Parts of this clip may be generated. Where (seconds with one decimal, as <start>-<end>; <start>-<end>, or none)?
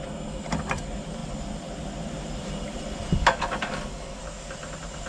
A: 3.2-4.2